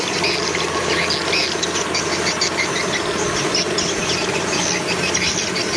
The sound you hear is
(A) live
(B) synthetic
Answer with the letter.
A